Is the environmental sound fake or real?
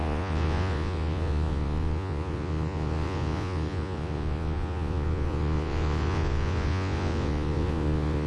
fake